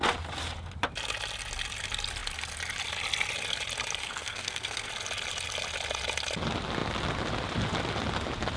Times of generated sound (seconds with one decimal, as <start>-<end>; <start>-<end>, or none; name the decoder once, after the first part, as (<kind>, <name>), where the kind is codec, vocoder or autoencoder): 4.0-4.9 (codec, SNAC)